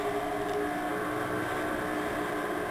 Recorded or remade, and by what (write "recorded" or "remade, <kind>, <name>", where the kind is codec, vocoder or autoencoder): recorded